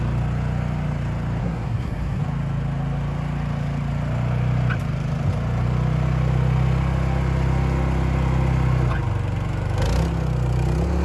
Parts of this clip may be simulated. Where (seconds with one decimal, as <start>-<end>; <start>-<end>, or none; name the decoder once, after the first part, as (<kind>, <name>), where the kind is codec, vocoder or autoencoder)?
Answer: 1.4-2.2 (codec, SNAC)